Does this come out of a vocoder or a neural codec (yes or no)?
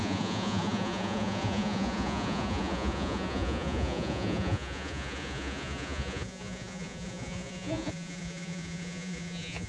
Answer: yes